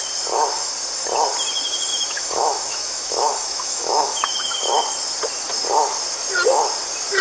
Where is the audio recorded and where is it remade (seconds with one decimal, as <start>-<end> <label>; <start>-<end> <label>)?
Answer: 0.0-1.9 recorded; 1.9-4.8 remade; 4.8-7.2 recorded